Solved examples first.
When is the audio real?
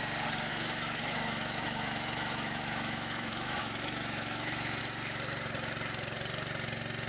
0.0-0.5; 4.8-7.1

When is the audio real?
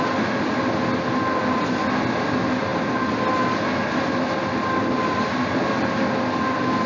0.0-6.9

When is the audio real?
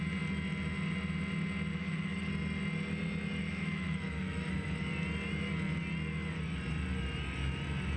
0.0-1.7; 2.3-3.4; 4.5-8.0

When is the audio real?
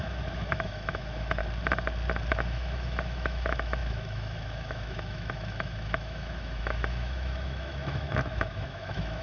1.4-2.3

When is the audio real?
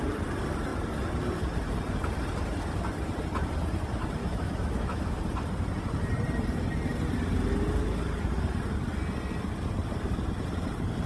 0.0-4.2; 5.2-11.1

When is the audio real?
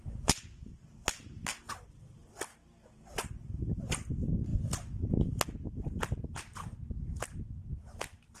0.0-8.4